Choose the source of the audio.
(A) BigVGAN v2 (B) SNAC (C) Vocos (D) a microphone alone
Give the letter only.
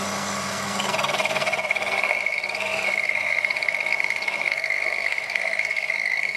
B